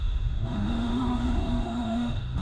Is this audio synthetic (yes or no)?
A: yes